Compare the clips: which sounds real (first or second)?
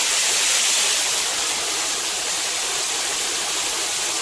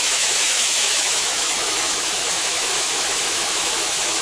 first